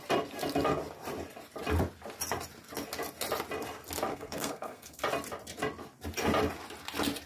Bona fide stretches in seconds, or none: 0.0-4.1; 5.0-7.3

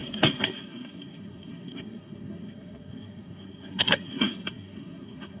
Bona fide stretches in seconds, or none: none

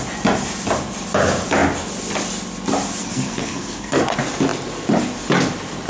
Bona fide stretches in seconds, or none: 0.0-3.0; 4.0-5.9

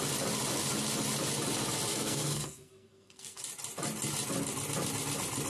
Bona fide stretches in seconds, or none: 0.0-1.9; 3.4-5.5